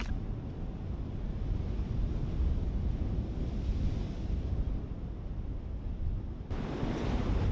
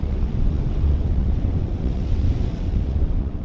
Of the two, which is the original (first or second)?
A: first